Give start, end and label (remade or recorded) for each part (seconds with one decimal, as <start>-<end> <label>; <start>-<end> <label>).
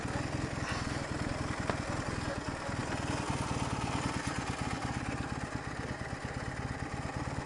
0.0-7.5 recorded